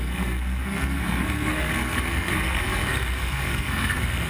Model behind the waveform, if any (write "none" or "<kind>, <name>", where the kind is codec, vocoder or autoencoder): codec, SNAC